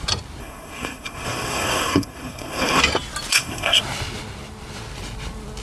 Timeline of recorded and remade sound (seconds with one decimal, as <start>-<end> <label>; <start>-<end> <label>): 0.0-0.4 recorded; 0.4-2.8 remade; 2.8-3.3 recorded; 3.3-3.8 remade; 3.8-5.6 recorded

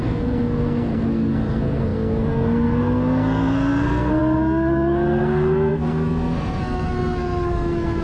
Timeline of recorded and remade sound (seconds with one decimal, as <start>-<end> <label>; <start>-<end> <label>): 0.0-8.0 remade

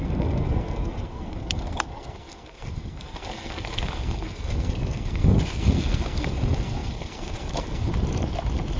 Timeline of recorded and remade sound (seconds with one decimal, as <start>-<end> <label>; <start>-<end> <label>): 0.0-7.9 remade; 7.9-8.8 recorded

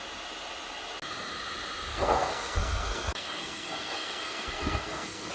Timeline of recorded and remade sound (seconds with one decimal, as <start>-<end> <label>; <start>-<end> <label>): 0.0-1.9 recorded; 1.9-5.3 remade

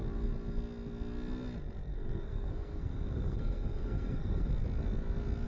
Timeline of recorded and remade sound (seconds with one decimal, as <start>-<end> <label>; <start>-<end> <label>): 0.0-1.9 recorded; 1.9-4.5 remade; 4.5-5.5 recorded

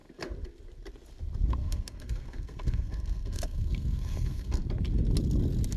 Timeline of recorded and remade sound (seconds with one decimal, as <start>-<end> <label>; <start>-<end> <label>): 0.0-1.6 recorded; 1.6-4.6 remade; 4.6-5.8 recorded